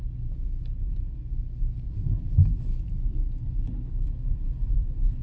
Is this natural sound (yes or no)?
yes